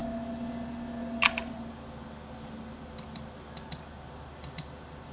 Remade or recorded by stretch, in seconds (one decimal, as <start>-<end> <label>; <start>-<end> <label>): 0.0-5.1 recorded